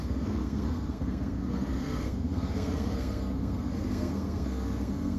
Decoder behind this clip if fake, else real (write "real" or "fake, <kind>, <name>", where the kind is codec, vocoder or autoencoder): fake, codec, SNAC